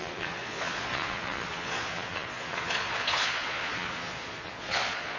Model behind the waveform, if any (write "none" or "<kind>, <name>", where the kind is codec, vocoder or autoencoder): vocoder, Vocos